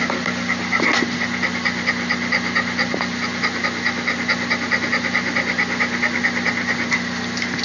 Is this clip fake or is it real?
real